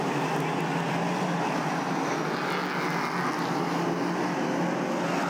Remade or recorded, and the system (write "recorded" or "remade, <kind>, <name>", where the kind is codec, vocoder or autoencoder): recorded